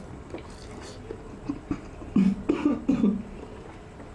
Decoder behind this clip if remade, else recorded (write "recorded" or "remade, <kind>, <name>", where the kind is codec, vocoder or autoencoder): recorded